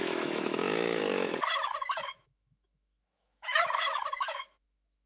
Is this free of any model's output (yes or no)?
no